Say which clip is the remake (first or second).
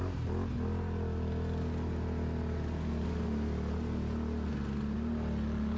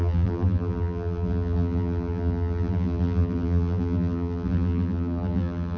second